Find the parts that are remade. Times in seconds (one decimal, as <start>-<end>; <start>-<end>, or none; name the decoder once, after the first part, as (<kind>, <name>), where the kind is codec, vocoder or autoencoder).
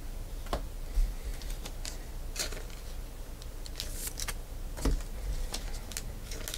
none